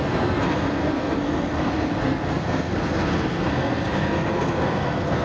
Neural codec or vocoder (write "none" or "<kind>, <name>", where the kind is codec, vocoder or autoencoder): codec, SNAC